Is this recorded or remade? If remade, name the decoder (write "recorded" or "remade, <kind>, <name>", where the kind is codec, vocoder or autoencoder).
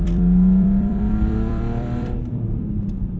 remade, vocoder, BigVGAN v2